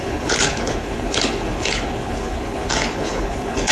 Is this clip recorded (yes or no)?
no